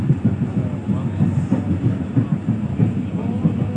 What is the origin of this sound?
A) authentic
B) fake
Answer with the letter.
A